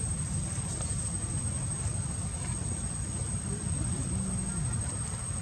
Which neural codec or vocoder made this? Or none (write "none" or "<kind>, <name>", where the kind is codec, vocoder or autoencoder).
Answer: none